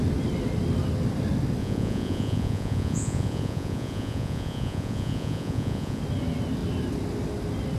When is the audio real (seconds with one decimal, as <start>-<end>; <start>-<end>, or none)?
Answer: 0.0-1.6; 6.0-7.8